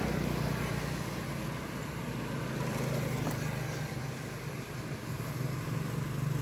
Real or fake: real